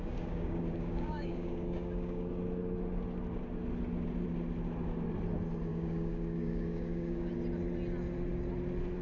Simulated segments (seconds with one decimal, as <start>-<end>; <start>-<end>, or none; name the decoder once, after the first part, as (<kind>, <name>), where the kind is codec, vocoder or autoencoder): 0.0-2.3 (codec, DAC); 5.7-7.3